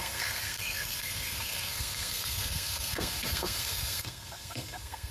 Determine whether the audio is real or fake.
fake